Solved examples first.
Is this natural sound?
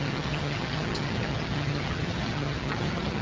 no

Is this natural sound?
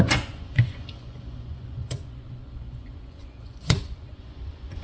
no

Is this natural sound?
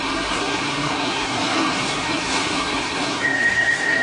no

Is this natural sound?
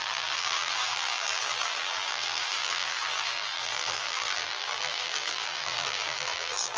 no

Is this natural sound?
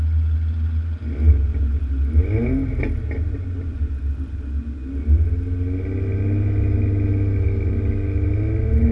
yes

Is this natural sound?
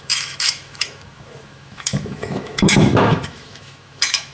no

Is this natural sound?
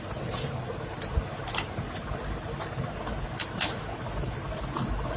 yes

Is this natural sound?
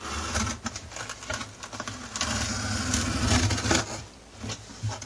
yes